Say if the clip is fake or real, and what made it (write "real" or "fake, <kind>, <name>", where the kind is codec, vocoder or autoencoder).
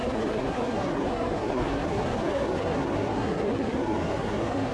fake, codec, SNAC